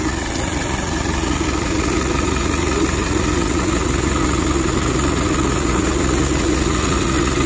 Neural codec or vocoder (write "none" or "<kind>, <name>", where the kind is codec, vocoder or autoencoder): vocoder, Vocos